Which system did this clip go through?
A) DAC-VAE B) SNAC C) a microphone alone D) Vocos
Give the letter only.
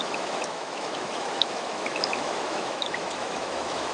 A